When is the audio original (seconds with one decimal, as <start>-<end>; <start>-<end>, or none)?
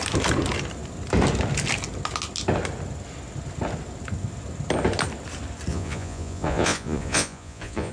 0.0-5.7